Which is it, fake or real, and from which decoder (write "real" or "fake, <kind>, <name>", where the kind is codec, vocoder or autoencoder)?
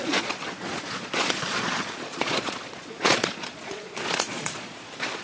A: fake, vocoder, Vocos